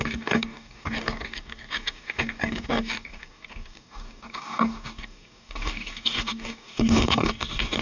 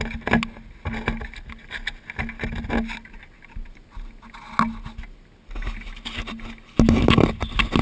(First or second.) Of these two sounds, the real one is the second